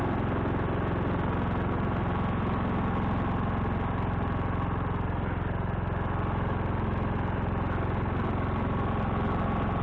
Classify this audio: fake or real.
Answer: real